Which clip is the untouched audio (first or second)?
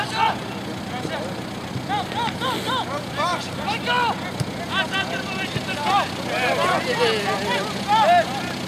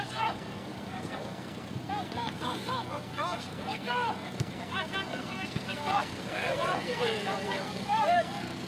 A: first